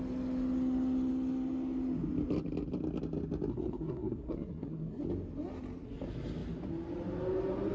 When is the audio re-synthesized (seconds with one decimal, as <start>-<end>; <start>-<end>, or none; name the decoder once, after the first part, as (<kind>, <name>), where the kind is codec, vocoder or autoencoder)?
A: 3.5-5.0 (codec, SNAC)